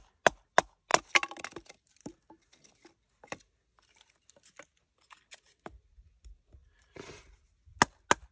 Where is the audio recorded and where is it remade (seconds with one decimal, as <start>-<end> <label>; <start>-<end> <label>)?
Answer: 0.0-6.6 recorded; 6.6-7.3 remade; 7.3-8.3 recorded